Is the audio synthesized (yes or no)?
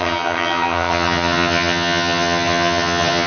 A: yes